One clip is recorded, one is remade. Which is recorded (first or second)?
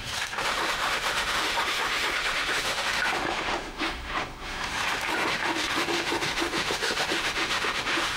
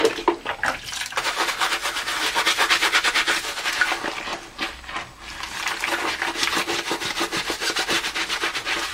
second